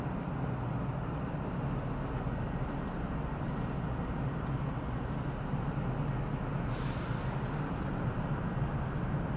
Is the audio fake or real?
real